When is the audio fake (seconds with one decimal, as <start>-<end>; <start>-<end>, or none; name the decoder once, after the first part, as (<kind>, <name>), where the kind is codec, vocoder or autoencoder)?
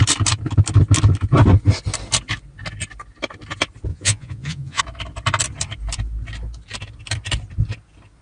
3.9-4.8 (vocoder, Vocos)